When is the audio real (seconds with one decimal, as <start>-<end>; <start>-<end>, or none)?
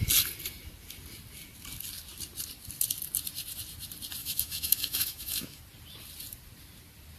0.0-4.2; 5.6-7.2